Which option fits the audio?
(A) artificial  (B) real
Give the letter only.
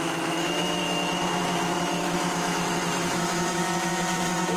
A